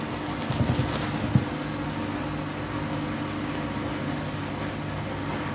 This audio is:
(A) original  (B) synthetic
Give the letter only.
A